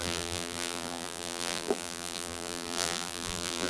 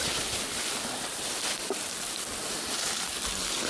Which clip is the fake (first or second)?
first